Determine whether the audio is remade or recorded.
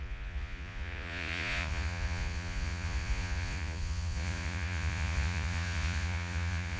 remade